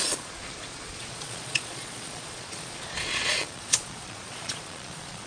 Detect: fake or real fake